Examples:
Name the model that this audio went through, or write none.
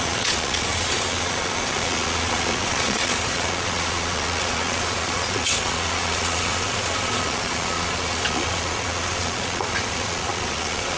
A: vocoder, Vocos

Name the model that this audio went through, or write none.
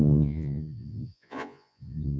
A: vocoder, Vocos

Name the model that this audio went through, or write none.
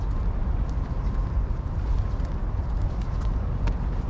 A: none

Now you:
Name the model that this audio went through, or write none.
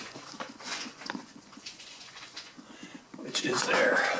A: vocoder, Vocos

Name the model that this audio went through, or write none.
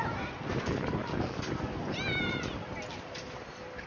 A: none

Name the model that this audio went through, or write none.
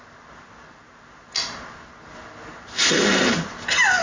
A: none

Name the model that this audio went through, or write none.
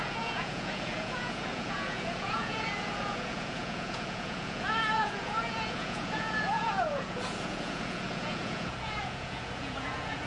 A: vocoder, Vocos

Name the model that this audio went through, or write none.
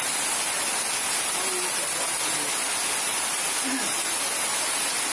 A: none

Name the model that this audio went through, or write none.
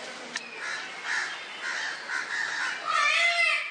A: none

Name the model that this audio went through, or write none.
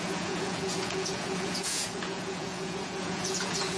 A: vocoder, Vocos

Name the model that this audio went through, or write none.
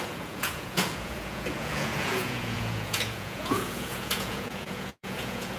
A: vocoder, Vocos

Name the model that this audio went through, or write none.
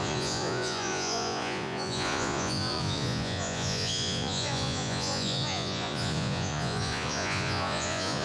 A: vocoder, Vocos